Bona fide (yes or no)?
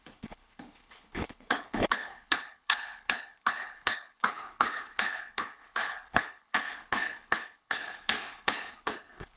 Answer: no